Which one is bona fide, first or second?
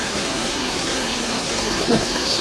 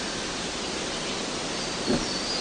second